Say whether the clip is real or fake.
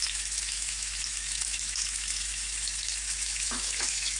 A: fake